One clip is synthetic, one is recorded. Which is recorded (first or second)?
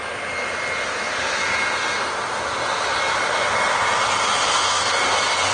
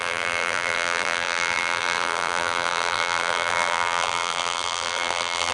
first